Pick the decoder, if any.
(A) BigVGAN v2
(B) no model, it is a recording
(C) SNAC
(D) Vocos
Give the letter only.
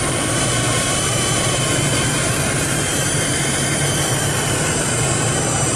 A